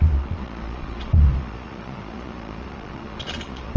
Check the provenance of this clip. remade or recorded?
remade